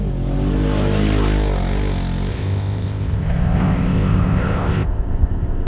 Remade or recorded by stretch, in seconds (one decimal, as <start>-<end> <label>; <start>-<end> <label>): 0.0-2.3 recorded; 2.3-5.7 remade